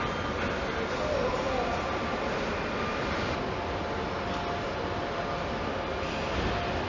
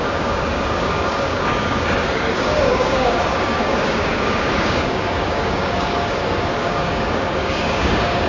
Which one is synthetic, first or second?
second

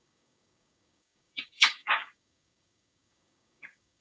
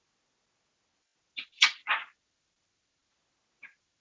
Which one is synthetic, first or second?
first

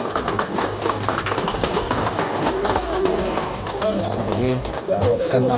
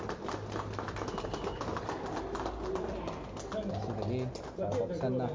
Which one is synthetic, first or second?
first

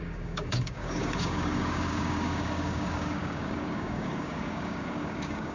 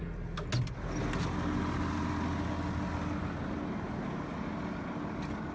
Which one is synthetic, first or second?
first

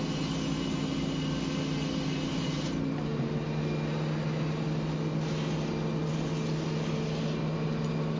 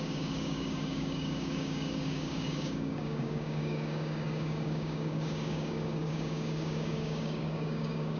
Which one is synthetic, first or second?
second